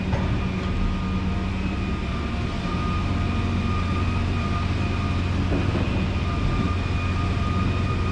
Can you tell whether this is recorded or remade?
recorded